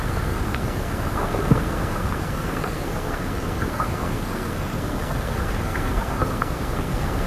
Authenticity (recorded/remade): remade